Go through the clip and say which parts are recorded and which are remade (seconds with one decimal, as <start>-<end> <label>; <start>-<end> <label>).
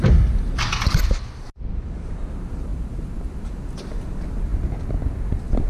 0.0-5.7 recorded